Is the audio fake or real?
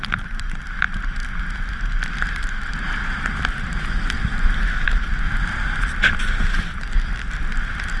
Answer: real